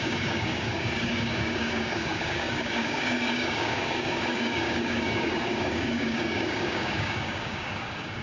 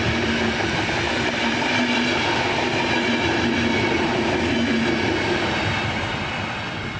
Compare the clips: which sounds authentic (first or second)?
second